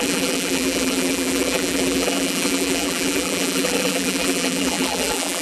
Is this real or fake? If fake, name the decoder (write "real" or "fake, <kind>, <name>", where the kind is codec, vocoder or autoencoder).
fake, vocoder, BigVGAN v2